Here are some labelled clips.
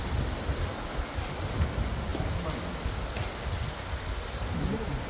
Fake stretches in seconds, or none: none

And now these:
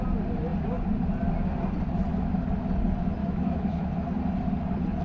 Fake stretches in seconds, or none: 3.2-3.9 (autoencoder, DAC-VAE)

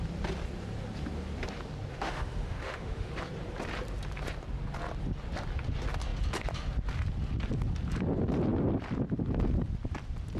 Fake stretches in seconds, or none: 1.9-3.1 (autoencoder, DAC-VAE)

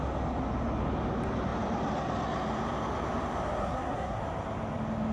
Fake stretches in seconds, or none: 3.6-4.2 (codec, SNAC)

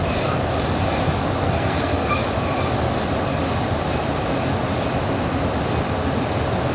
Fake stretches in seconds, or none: 1.4-2.1 (codec, SNAC)

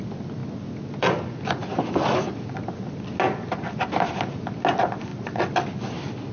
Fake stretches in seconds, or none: none

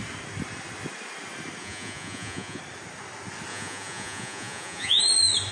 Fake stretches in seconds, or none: 1.6-2.6 (vocoder, Vocos); 3.5-5.0